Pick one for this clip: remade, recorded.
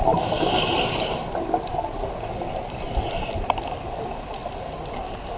recorded